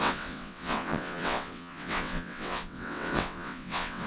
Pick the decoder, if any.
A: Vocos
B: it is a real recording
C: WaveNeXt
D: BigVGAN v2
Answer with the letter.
C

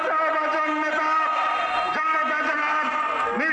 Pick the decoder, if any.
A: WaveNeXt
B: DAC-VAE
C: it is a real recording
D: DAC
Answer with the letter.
C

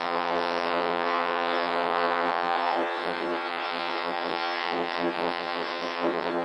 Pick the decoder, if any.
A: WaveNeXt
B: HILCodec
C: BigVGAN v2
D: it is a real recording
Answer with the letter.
A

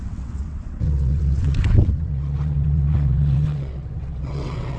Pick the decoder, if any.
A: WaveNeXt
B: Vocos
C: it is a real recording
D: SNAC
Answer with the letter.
A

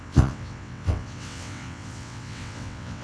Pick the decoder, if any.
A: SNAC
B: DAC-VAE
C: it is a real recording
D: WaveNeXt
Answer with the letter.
D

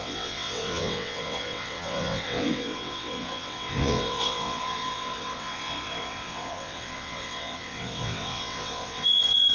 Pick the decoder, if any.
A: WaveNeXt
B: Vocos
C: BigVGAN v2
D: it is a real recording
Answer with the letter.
A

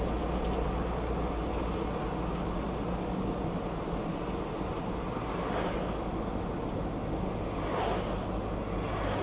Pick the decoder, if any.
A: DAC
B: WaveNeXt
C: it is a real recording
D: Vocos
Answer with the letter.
C